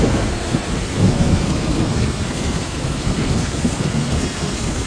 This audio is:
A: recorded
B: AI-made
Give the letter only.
B